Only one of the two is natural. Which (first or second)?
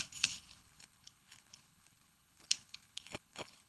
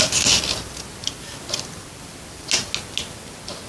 second